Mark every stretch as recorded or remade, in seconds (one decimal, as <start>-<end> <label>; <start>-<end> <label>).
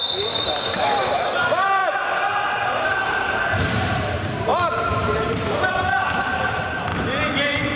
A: 0.0-1.8 remade; 1.8-2.9 recorded; 2.9-6.9 remade; 6.9-7.8 recorded